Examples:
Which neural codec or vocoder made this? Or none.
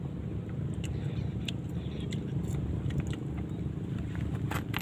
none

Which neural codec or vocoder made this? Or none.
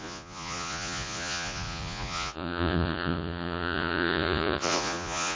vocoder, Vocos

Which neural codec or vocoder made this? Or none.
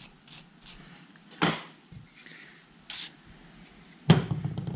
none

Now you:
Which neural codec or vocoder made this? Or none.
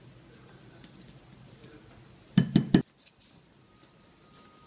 none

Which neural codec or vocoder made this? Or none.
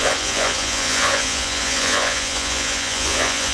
vocoder, Vocos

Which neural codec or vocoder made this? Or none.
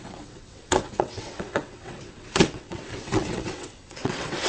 vocoder, WaveNeXt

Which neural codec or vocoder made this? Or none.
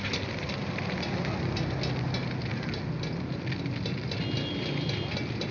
none